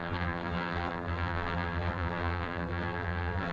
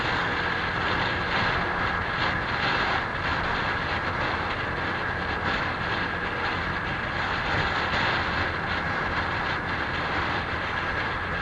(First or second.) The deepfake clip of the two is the first